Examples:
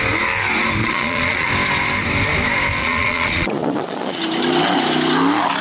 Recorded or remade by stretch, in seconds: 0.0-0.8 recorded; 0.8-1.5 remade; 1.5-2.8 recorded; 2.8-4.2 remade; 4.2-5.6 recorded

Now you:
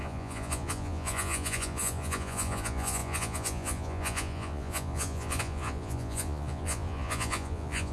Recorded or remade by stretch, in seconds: 0.0-7.9 remade

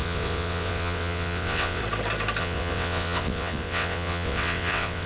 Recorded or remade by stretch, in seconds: 0.0-1.8 remade; 1.8-2.4 recorded; 2.4-5.1 remade

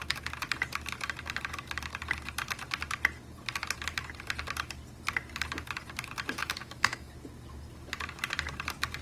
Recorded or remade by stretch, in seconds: 0.0-6.4 recorded; 6.4-7.1 remade; 7.1-9.0 recorded